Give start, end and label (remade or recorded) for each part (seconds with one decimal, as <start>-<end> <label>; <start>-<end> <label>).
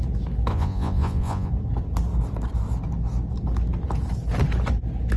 0.0-0.5 recorded; 0.5-1.5 remade; 1.5-5.2 recorded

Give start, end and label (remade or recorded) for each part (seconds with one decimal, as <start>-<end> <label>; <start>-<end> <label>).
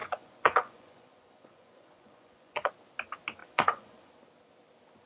0.0-2.7 remade; 2.7-3.4 recorded; 3.4-4.1 remade; 4.1-5.1 recorded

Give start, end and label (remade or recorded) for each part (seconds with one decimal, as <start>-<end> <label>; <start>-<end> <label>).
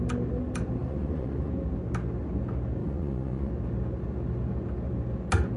0.0-0.8 recorded; 0.8-1.5 remade; 1.5-2.8 recorded; 2.8-3.5 remade; 3.5-5.6 recorded